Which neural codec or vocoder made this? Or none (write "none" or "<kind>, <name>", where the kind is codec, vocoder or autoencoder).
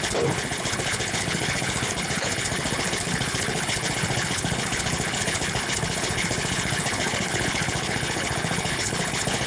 codec, HILCodec